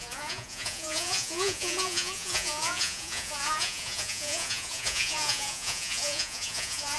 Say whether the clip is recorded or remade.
remade